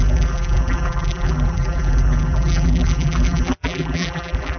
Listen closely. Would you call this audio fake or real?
fake